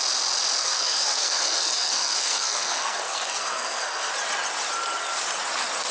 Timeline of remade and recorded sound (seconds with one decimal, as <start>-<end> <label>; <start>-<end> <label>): 0.0-0.6 recorded; 0.6-4.1 remade; 4.1-5.9 recorded